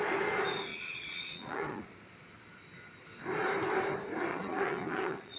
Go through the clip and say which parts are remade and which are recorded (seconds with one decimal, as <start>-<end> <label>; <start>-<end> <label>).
0.0-0.7 recorded; 0.7-1.9 remade; 1.9-4.3 recorded; 4.3-5.4 remade